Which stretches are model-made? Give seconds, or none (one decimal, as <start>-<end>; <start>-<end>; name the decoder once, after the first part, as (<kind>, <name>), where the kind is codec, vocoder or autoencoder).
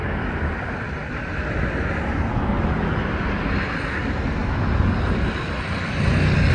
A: none